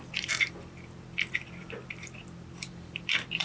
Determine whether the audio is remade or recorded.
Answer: remade